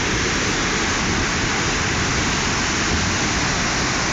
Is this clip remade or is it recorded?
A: recorded